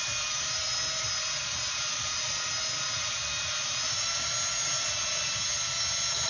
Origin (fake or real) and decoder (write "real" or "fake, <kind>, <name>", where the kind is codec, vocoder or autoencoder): real